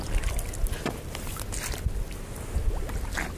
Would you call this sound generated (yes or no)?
no